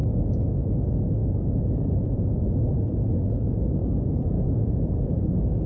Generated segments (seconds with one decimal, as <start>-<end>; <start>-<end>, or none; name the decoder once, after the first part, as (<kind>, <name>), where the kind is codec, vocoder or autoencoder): 0.0-0.7 (vocoder, Vocos); 1.2-3.1; 3.8-5.3